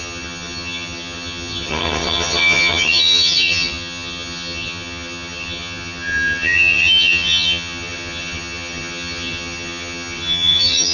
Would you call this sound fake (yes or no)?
yes